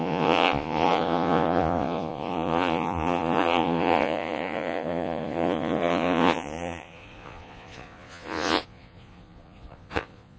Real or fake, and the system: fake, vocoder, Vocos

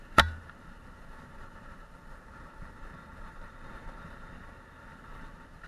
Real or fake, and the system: fake, vocoder, BigVGAN v2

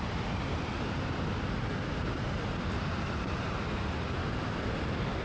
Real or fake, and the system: real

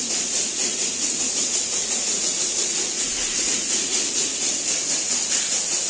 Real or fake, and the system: fake, vocoder, Vocos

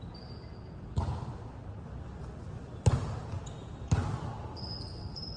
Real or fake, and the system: real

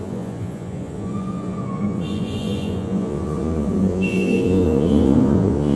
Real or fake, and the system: fake, vocoder, Vocos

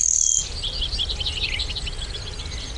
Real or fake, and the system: real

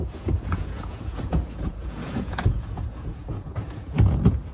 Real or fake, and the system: fake, vocoder, Vocos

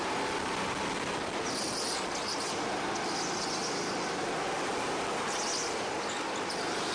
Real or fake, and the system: real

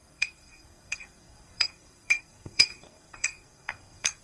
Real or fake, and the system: fake, codec, SNAC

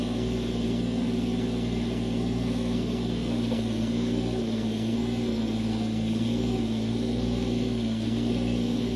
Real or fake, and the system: fake, codec, SNAC